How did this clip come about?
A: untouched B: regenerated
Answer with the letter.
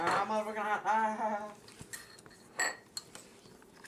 A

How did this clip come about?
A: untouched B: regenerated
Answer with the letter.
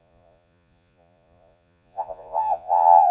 B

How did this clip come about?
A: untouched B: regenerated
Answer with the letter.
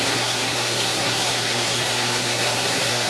B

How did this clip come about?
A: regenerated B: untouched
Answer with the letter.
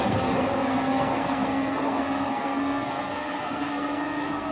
A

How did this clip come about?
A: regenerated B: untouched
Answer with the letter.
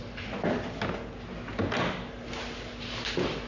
B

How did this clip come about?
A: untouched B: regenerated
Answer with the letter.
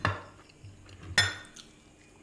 A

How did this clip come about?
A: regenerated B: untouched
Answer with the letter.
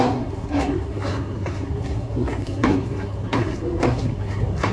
A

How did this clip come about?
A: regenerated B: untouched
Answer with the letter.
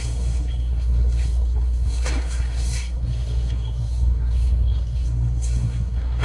A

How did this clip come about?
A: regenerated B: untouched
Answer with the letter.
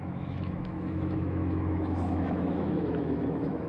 A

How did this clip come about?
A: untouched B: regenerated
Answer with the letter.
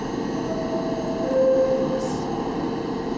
A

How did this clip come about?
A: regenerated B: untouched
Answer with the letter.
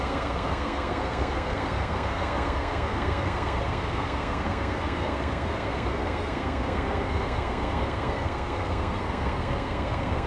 A